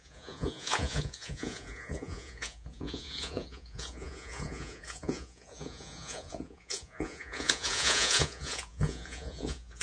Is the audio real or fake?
fake